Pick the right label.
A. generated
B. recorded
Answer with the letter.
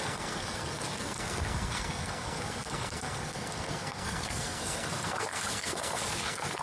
A